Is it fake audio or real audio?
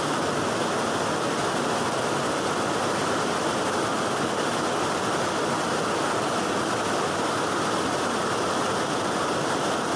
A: real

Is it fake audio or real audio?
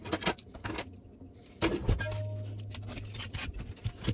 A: real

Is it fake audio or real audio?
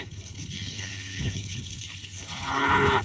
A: fake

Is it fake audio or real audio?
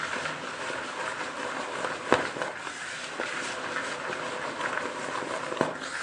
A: real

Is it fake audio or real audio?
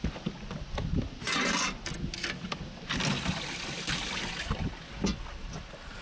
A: real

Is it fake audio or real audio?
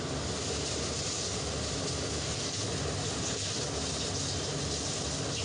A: real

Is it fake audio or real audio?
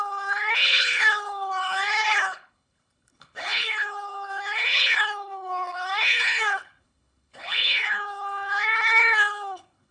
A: fake